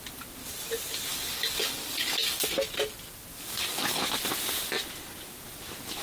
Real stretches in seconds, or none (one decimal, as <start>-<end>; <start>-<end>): 0.0-1.1; 2.4-3.3; 4.0-6.0